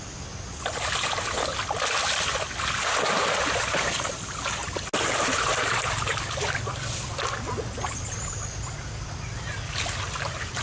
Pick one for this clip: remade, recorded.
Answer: recorded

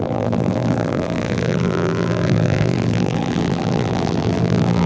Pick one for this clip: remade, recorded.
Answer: remade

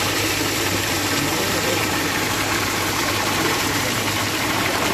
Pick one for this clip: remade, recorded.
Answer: remade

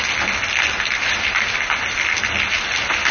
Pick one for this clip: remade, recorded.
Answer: recorded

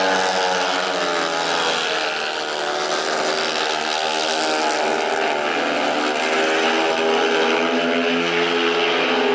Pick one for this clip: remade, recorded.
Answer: recorded